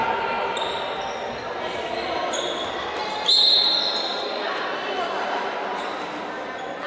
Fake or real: real